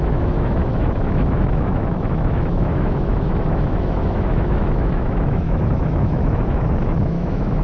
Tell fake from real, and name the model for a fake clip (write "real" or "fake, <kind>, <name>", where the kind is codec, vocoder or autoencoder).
fake, autoencoder, DAC-VAE